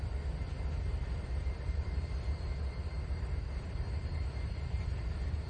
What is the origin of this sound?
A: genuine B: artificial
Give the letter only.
B